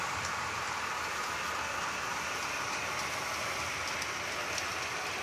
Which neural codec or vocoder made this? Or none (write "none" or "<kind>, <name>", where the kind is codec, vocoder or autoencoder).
none